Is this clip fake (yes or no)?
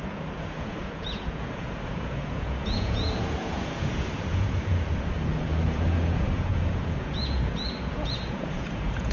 yes